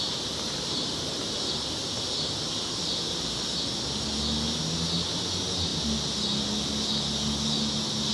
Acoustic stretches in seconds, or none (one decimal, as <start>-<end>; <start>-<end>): 0.0-8.1